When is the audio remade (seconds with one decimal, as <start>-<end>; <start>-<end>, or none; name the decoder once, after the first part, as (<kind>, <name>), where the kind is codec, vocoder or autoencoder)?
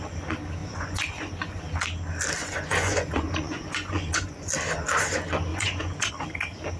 0.6-1.6 (vocoder, Vocos); 2.4-4.5; 5.5-6.1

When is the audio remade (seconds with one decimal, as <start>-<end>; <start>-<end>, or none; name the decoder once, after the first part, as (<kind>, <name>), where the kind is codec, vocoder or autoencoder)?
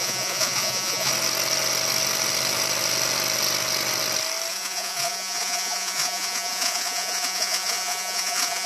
0.0-1.1 (vocoder, Vocos); 4.5-8.7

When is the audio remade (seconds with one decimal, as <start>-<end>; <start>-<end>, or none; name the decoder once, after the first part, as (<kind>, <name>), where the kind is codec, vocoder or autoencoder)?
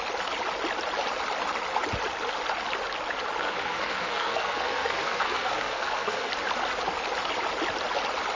3.4-6.3 (codec, SNAC)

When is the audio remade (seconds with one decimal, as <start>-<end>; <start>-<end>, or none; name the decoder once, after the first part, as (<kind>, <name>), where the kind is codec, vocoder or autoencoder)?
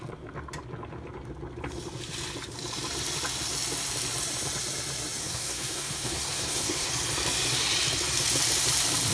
5.2-6.9 (codec, SNAC)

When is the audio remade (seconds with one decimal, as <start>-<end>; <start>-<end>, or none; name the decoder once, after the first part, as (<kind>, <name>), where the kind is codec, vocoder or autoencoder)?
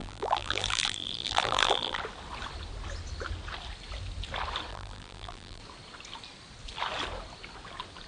0.0-2.0 (vocoder, BigVGAN v2); 4.7-5.6